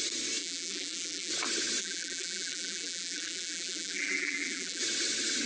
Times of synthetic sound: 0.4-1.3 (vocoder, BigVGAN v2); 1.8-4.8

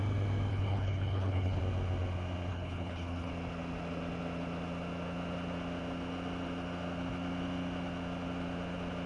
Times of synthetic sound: 0.5-1.6 (codec, HILCodec); 2.5-3.3

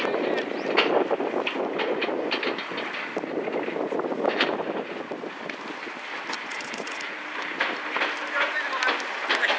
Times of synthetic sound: 6.5-7.2 (vocoder, Vocos)